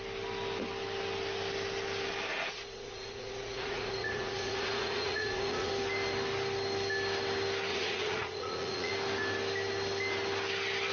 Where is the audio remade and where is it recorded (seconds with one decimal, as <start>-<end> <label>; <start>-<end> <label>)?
0.0-2.3 recorded; 2.3-5.7 remade; 5.7-7.7 recorded; 7.7-8.9 remade; 8.9-10.9 recorded